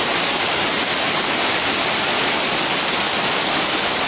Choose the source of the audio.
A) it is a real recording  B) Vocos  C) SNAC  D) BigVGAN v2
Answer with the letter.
A